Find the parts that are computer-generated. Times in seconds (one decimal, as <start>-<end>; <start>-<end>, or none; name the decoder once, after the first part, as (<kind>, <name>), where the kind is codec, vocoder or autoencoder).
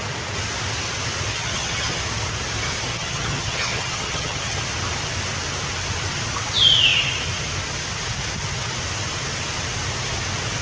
1.3-2.0 (vocoder, HiFi-GAN); 2.9-4.6